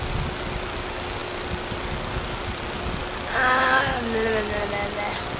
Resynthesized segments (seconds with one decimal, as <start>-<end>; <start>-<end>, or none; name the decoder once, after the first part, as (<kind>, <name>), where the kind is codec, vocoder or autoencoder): none

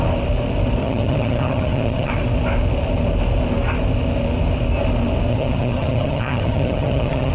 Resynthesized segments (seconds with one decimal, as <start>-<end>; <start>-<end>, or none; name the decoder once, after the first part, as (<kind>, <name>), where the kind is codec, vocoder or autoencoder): 0.8-2.1 (vocoder, HiFi-GAN); 5.3-7.3